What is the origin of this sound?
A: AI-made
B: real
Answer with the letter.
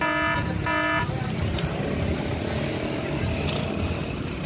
B